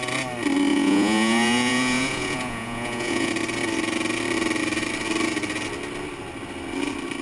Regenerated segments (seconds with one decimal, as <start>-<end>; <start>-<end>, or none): 0.7-3.3